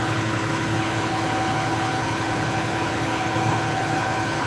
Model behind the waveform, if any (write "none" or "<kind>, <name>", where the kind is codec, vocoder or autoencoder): codec, HILCodec